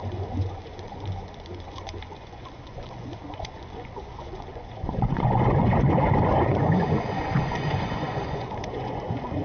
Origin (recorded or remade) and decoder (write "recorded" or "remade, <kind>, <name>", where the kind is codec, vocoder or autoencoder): remade, vocoder, Vocos